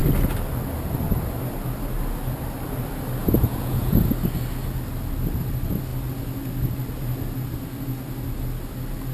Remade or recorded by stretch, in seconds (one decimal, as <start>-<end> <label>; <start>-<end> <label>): 0.0-3.2 recorded; 3.2-4.1 remade; 4.1-9.1 recorded